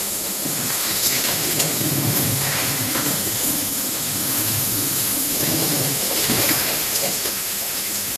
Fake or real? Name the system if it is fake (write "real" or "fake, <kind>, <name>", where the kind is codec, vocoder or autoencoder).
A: fake, autoencoder, DAC-VAE